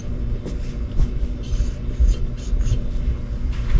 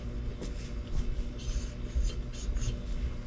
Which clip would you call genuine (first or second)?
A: second